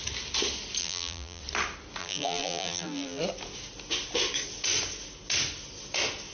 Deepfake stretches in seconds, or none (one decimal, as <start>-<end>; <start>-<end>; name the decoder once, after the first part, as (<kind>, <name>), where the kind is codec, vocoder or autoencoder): 0.8-1.4 (vocoder, BigVGAN v2); 2.0-3.2